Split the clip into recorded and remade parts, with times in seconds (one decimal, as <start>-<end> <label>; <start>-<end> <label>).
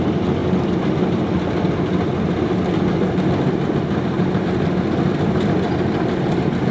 0.0-6.7 recorded